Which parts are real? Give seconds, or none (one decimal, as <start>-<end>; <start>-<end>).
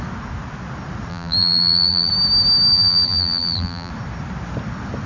0.0-1.1; 2.1-2.7; 3.9-5.1